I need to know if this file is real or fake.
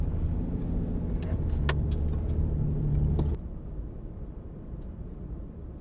real